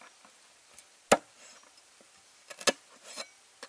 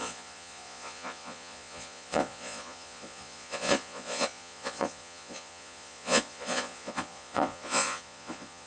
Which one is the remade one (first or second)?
second